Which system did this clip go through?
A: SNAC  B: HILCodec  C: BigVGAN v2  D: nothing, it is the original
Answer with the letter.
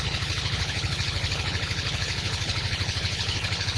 B